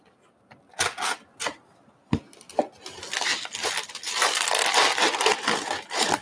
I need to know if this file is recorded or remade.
recorded